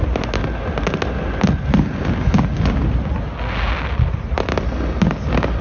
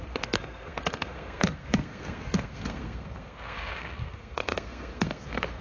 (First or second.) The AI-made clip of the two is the second